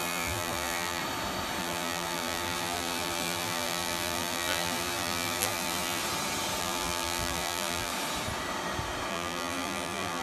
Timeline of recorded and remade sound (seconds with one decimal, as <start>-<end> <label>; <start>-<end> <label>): 0.0-1.0 remade; 1.0-1.6 recorded; 1.6-6.0 remade; 6.0-6.6 recorded; 6.6-7.9 remade; 7.9-9.1 recorded; 9.1-10.2 remade